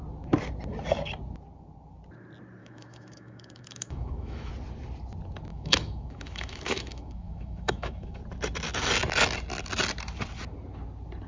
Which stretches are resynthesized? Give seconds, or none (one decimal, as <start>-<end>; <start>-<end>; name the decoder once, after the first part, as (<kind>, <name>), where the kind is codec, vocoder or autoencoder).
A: 2.6-4.5 (autoencoder, DAC-VAE); 5.5-8.2

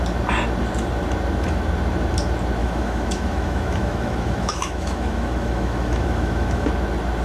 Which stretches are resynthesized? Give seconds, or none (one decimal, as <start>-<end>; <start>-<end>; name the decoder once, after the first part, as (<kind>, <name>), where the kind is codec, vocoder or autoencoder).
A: 2.6-6.7 (autoencoder, DAC-VAE)